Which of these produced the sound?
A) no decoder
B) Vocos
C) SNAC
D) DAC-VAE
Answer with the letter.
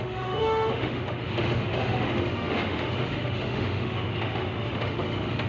D